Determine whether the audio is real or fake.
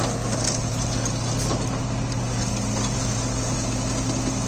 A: real